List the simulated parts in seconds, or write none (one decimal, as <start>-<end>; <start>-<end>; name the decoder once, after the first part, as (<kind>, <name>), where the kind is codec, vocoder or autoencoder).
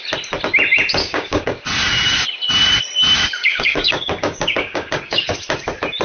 1.0-1.6 (codec, DAC); 3.4-5.3